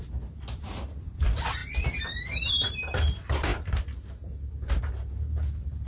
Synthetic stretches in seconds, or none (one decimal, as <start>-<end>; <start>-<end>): none